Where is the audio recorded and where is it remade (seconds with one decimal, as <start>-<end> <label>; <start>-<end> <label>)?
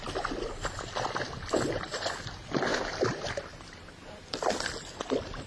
0.0-2.7 recorded; 2.7-3.3 remade; 3.3-5.5 recorded